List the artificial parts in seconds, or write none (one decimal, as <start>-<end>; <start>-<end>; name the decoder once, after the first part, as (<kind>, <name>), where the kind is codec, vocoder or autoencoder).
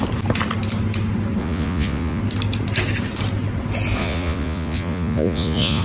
1.4-2.2 (vocoder, Vocos); 4.0-5.8